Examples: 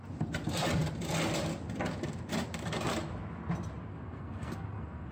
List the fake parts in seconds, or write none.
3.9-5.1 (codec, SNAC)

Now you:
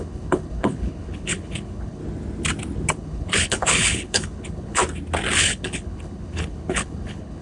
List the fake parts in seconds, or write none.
0.0-2.0 (codec, HILCodec); 2.9-4.8; 5.4-7.4

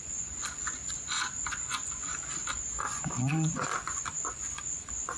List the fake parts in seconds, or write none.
0.0-0.8 (vocoder, Vocos); 1.5-2.1; 2.8-5.2

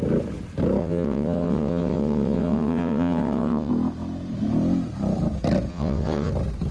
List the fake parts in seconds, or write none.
0.8-3.7 (vocoder, WaveNeXt); 5.7-6.3

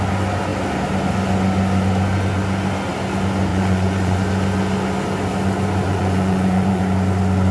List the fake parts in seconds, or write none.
3.5-4.2 (vocoder, Vocos); 5.9-6.8

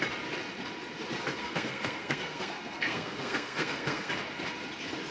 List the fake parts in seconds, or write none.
1.4-4.1 (codec, SNAC)

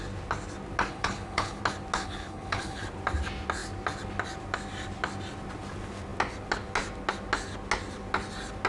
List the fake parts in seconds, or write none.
0.9-1.6 (codec, HILCodec); 2.0-2.8

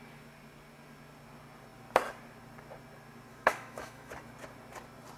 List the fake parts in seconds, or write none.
3.3-4.1 (autoencoder, DAC-VAE)